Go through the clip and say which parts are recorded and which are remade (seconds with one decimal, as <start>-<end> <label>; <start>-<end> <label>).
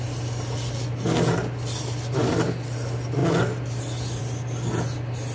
0.0-5.3 recorded